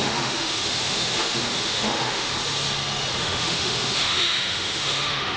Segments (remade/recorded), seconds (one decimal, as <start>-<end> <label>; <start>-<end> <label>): 0.0-2.3 remade; 2.3-3.2 recorded; 3.2-5.4 remade